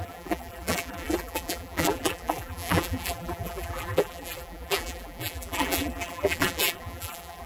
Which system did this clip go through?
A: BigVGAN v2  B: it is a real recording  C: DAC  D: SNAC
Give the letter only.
A